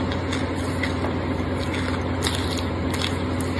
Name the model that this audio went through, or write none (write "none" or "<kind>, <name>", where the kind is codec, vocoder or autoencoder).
none